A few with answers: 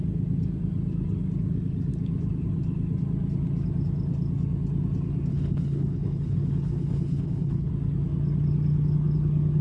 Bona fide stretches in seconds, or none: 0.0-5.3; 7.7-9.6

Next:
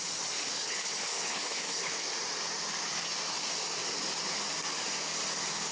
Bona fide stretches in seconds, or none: 0.0-0.5; 2.0-5.7

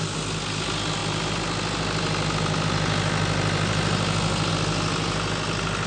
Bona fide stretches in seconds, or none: 0.0-5.9

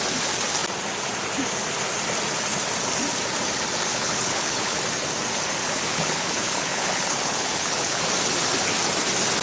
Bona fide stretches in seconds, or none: 0.0-3.9; 4.8-5.6; 8.0-9.4

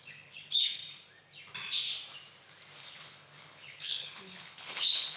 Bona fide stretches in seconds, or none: 0.8-2.8

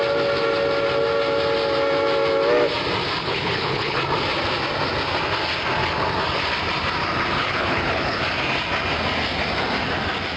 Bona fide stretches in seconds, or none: 0.0-3.2; 4.0-7.4; 8.2-10.4